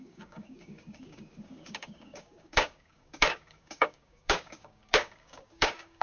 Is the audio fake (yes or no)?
yes